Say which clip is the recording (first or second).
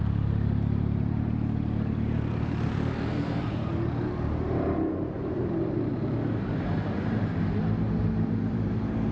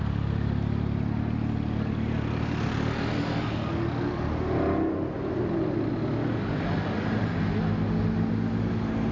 second